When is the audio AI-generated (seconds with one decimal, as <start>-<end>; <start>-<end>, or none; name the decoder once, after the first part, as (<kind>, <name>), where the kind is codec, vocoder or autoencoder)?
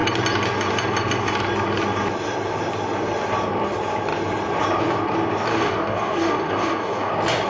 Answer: 5.5-7.1 (codec, DAC)